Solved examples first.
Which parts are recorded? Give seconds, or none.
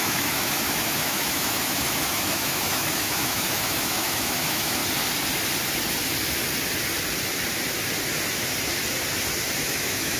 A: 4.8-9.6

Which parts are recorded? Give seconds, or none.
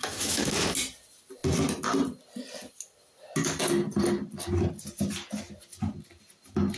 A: 0.5-6.8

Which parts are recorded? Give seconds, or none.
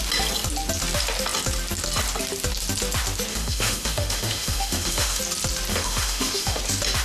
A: 0.0-3.3; 5.2-5.7; 6.6-7.0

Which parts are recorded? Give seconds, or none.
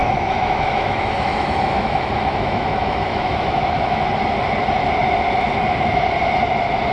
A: 4.1-6.9